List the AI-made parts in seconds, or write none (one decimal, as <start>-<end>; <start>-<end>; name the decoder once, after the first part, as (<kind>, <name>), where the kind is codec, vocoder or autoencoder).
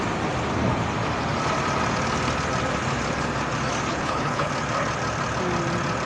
3.9-4.5 (codec, HILCodec)